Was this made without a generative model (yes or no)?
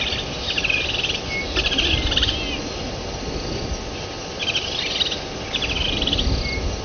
yes